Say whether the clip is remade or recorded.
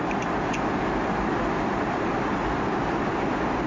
recorded